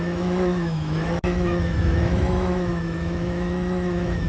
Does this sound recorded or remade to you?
remade